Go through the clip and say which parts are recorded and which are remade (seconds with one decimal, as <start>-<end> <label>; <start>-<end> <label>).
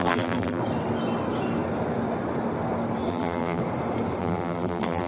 0.0-0.6 remade; 0.6-3.1 recorded; 3.1-3.6 remade; 3.6-4.2 recorded; 4.2-5.1 remade